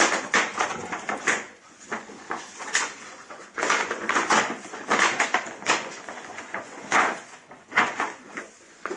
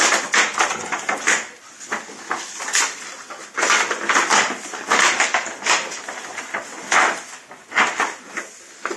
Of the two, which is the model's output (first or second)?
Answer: first